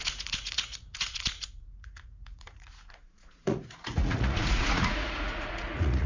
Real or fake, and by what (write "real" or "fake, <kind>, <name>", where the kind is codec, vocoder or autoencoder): fake, vocoder, Vocos